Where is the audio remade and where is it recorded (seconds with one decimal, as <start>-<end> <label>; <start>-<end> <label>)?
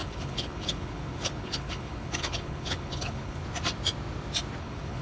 0.0-3.4 remade; 3.4-4.6 recorded; 4.6-5.0 remade